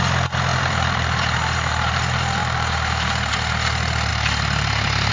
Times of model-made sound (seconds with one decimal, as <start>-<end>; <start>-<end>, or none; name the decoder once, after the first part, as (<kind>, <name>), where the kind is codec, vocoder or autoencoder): 0.5-2.0 (vocoder, BigVGAN v2); 2.4-3.3